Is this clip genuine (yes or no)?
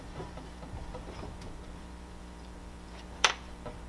no